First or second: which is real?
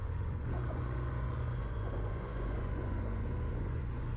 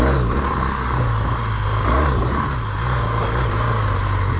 second